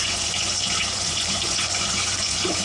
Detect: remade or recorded remade